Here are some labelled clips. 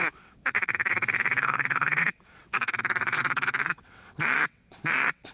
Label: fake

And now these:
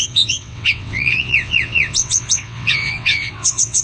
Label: fake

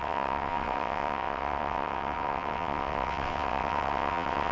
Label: fake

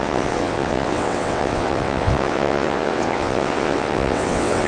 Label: fake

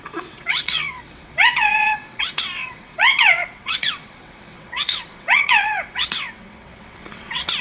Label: fake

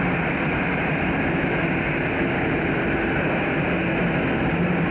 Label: real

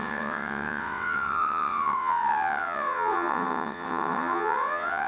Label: fake